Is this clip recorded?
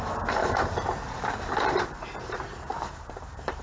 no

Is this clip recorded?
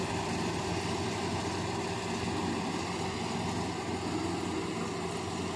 yes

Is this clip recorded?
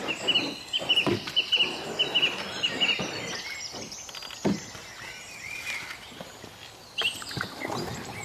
no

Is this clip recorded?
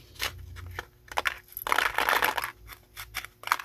yes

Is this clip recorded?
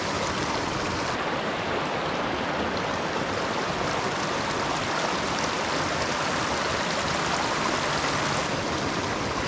yes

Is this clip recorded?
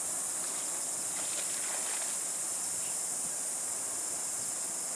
yes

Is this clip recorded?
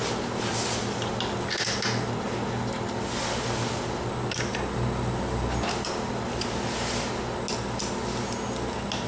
yes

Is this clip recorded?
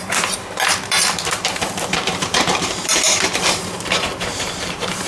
no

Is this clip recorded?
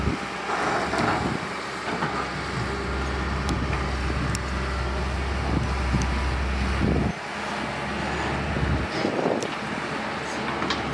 yes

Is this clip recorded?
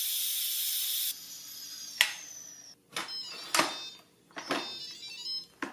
yes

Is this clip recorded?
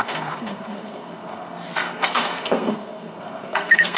no